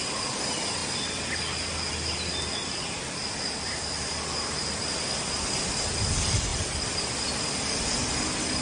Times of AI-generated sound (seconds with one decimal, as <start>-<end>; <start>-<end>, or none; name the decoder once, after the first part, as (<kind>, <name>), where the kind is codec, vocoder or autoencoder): none